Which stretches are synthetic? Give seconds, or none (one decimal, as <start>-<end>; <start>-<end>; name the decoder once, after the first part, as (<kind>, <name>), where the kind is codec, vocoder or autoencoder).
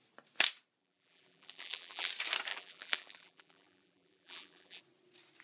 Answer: 0.8-2.1 (vocoder, BigVGAN v2); 2.5-4.8